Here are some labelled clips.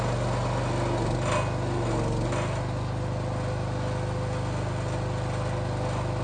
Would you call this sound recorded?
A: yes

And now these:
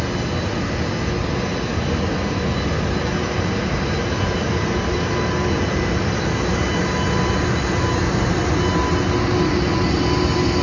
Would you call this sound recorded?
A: yes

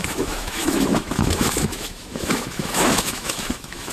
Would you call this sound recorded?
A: no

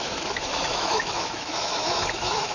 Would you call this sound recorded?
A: no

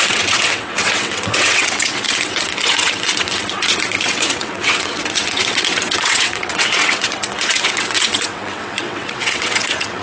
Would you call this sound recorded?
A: no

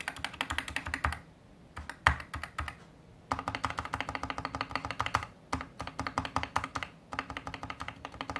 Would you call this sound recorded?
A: yes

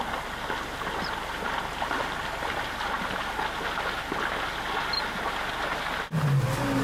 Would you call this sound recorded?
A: yes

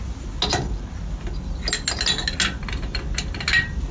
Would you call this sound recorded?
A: yes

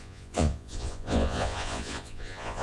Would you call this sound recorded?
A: no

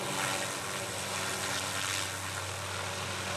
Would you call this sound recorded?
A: yes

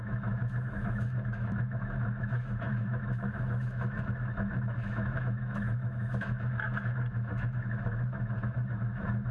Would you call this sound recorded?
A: no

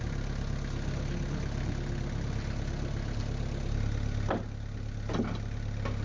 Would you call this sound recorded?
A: yes